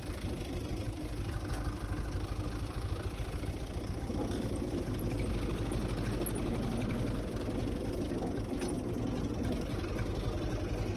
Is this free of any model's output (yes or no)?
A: yes